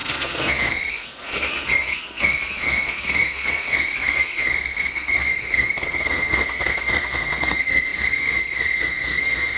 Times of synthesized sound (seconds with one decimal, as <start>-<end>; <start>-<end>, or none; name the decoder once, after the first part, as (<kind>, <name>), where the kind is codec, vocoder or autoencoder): 0.0-9.6 (codec, SNAC)